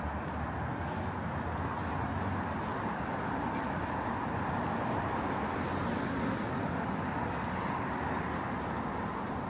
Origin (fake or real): real